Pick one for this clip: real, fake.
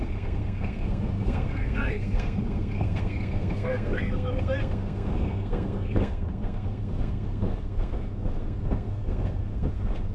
fake